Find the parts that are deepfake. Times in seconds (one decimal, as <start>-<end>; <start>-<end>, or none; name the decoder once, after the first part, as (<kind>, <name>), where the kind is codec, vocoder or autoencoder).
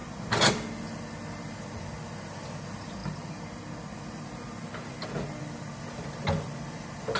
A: none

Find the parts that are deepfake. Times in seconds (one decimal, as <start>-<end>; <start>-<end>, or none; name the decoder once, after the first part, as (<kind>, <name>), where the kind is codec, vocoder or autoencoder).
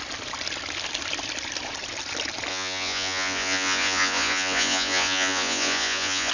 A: 2.5-6.3 (vocoder, Vocos)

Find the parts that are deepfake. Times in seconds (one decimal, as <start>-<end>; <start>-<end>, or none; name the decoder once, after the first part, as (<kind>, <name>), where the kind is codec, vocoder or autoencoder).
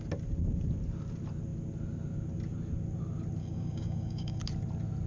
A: 3.4-4.4 (codec, DAC)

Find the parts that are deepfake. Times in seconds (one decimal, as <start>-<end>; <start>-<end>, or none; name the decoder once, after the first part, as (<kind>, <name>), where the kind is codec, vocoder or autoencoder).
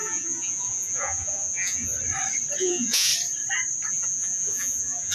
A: 0.0-1.9 (vocoder, Vocos); 2.6-3.1; 3.9-5.1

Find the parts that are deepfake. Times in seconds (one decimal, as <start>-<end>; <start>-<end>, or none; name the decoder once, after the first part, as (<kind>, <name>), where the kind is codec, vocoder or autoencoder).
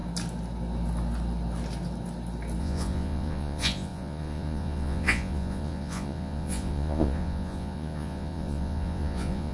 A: 2.6-9.5 (vocoder, Vocos)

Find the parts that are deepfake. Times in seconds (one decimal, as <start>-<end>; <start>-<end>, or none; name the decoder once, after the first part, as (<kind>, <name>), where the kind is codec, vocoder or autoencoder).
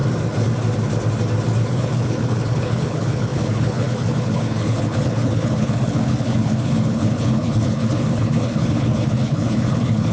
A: 1.7-10.1 (codec, HILCodec)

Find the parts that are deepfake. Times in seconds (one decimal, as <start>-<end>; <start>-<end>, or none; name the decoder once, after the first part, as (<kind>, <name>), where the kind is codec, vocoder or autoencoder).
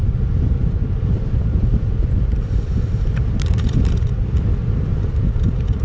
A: 0.6-4.1 (vocoder, BigVGAN v2); 4.6-5.8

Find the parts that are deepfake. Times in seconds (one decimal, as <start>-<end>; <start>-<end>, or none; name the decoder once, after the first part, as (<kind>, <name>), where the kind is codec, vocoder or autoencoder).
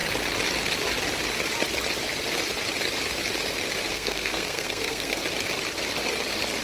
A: 3.9-5.2 (codec, SNAC)